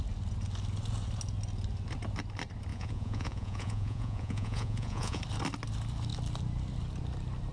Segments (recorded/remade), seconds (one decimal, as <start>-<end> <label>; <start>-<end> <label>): 0.0-2.7 recorded; 2.7-5.2 remade; 5.2-7.5 recorded